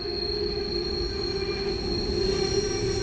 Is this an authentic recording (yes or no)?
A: yes